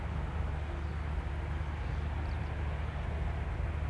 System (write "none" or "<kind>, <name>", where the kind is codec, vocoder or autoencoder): none